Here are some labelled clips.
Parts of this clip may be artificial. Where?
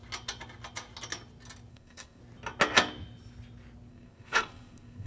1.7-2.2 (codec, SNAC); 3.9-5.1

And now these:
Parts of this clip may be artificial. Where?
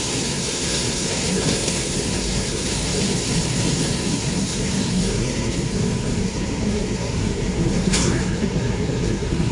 0.0-9.5 (codec, SNAC)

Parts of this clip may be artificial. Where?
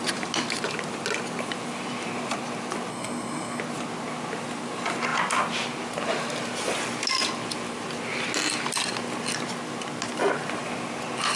2.9-3.6 (codec, SNAC)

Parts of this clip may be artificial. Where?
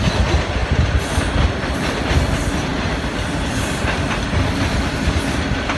none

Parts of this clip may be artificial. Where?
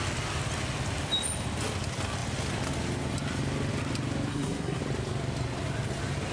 4.3-4.8 (codec, SNAC)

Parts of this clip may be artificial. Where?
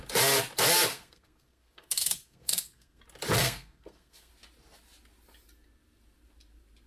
0.9-3.0 (codec, SNAC); 3.4-4.3